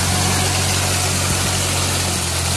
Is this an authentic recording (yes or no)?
yes